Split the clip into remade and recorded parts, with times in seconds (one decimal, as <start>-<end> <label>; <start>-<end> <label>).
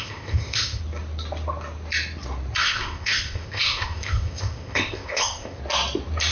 0.0-0.8 remade; 0.8-2.6 recorded; 2.6-5.6 remade; 5.6-6.3 recorded